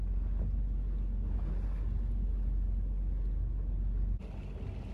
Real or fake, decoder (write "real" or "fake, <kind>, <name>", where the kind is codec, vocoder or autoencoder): real